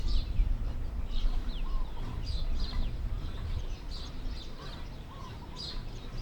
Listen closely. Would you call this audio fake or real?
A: fake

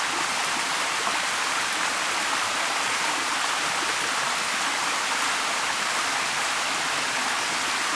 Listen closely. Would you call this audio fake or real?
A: real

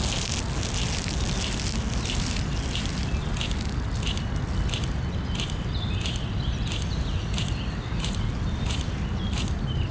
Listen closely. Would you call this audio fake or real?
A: real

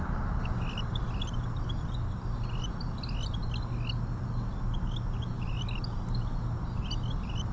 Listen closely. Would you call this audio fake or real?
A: real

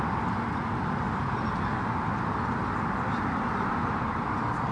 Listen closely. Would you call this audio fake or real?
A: real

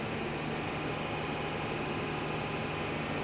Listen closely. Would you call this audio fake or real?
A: real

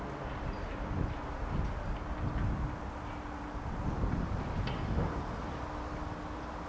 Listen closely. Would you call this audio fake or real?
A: real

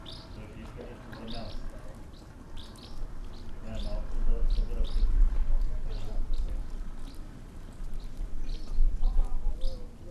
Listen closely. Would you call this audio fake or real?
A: real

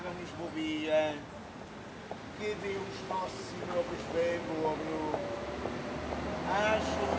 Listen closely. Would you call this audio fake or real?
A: real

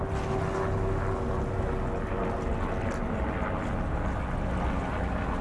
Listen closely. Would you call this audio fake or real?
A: real